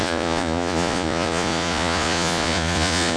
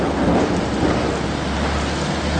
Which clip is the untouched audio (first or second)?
second